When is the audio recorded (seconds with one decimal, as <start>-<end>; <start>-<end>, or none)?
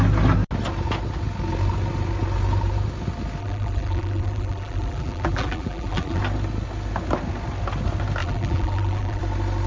0.0-3.4; 6.2-8.2; 9.2-9.7